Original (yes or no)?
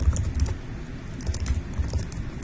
yes